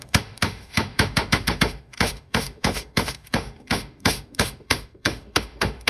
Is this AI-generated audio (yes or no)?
yes